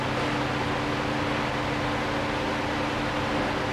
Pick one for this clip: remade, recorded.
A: recorded